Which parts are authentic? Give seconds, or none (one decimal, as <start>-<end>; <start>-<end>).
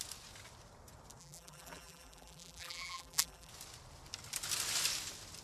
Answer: 0.0-1.2; 3.5-5.4